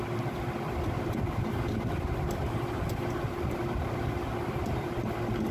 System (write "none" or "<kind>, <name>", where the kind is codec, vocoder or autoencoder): none